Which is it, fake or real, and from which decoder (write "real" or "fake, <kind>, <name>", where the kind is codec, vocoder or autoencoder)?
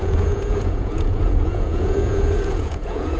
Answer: fake, vocoder, Vocos